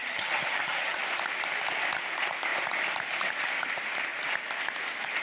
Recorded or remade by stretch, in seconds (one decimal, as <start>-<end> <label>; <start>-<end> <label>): 0.0-1.0 remade; 1.0-5.2 recorded